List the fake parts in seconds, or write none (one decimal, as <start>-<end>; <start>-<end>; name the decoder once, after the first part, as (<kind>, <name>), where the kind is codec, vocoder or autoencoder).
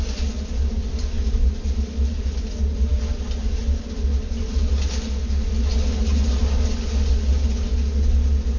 none